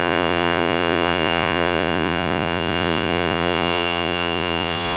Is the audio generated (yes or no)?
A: yes